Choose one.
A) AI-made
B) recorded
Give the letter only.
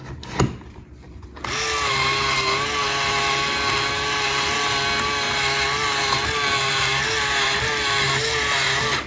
B